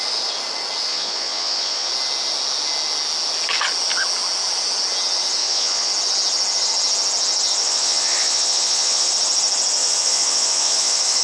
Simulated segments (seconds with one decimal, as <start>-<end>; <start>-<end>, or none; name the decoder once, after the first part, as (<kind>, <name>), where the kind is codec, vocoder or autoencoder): 0.9-1.9 (vocoder, Vocos); 5.4-5.9; 7.6-9.1; 9.8-11.2